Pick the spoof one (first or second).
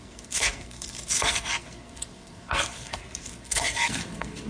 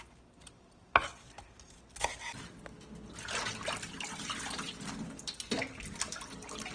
first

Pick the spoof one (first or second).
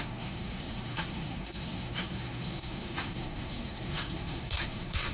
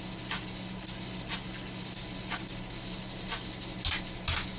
first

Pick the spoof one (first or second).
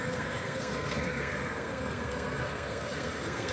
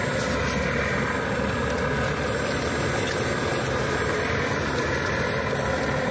first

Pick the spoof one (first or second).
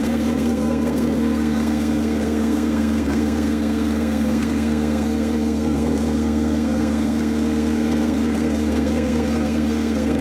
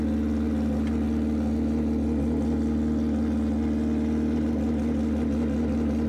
first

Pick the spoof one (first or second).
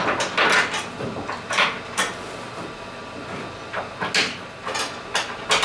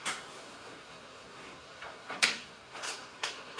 second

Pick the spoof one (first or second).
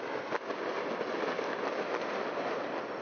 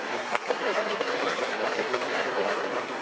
second